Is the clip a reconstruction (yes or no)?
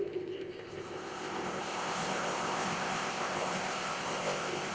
yes